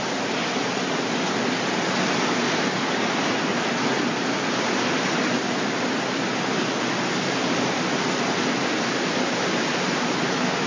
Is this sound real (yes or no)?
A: yes